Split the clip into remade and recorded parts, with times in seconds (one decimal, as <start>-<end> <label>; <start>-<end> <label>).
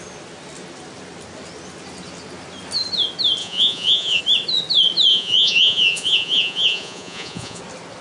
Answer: 0.0-3.4 recorded; 3.4-4.2 remade; 4.2-5.1 recorded; 5.1-7.6 remade; 7.6-8.0 recorded